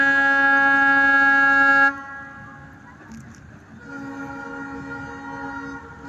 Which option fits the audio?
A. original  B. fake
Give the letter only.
A